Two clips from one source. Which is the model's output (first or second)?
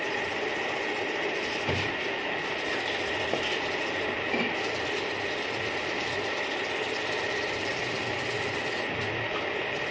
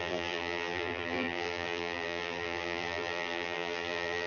second